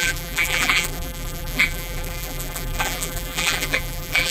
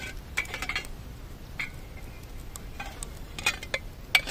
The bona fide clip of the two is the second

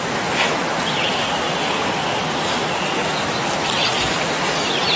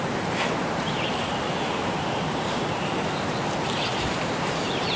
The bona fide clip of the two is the first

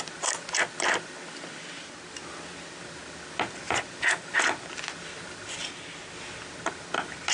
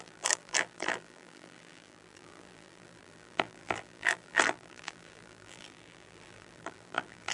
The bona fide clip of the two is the first